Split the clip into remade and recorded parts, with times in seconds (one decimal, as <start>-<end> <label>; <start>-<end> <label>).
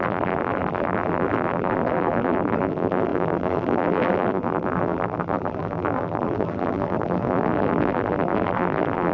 0.0-9.1 remade